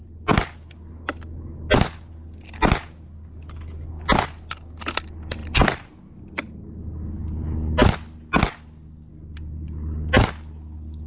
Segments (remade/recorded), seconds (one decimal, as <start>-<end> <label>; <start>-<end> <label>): 0.0-11.1 recorded